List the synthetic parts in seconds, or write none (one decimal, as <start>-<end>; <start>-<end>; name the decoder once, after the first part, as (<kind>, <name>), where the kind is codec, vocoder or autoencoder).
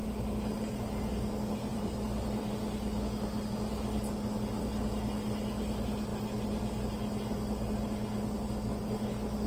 1.7-2.4 (vocoder, BigVGAN v2)